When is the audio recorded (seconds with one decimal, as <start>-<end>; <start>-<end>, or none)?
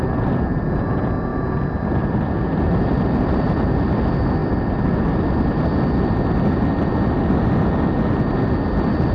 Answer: 0.0-9.1